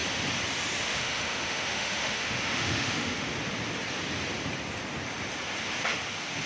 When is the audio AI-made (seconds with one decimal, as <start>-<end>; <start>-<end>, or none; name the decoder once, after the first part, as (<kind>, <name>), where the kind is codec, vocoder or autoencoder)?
0.8-3.3 (autoencoder, DAC-VAE)